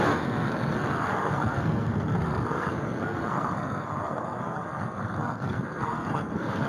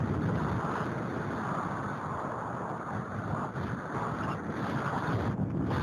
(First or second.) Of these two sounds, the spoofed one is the first